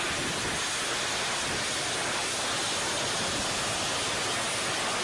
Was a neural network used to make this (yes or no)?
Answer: no